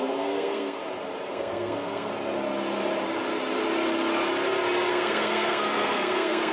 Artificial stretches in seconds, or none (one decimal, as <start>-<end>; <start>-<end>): 0.0-0.8; 1.3-2.1; 4.9-6.5